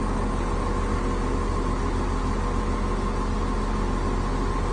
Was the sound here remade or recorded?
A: recorded